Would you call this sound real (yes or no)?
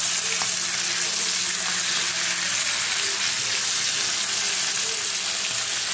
yes